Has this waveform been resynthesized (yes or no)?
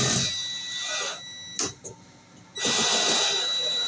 no